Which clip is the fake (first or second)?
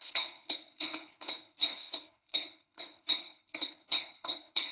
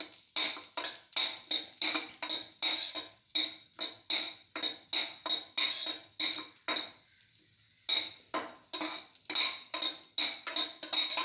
first